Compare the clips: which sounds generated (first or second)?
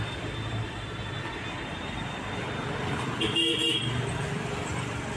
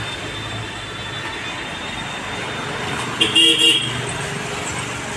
first